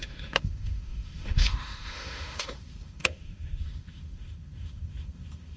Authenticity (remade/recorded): remade